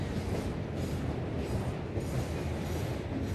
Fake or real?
fake